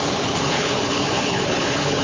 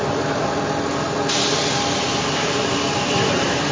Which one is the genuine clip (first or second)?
second